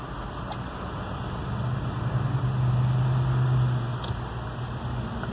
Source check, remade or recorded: recorded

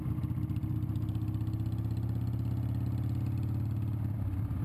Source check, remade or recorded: recorded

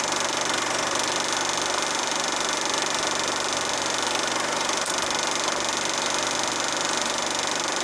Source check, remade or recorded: recorded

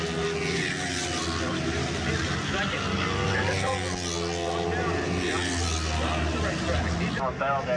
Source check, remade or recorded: recorded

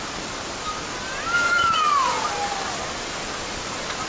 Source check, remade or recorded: recorded